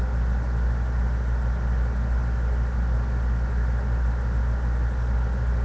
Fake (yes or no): no